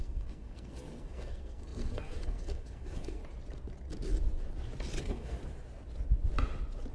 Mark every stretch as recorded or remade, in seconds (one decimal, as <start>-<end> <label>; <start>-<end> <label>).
0.0-3.2 remade; 3.2-5.0 recorded; 5.0-5.4 remade; 5.4-6.9 recorded